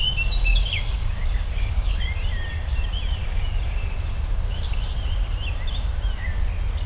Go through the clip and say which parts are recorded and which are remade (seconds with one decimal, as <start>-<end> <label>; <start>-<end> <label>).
0.0-0.5 recorded; 0.5-2.0 remade; 2.0-6.9 recorded